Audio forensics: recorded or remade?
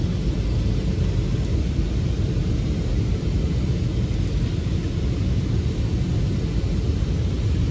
recorded